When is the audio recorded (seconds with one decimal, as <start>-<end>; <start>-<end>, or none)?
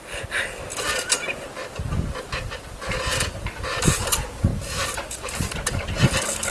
0.0-6.5